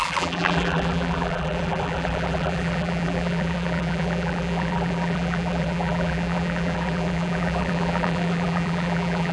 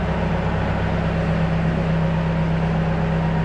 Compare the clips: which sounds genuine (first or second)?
second